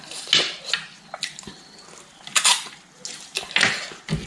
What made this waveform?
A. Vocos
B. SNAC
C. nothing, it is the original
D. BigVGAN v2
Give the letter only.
C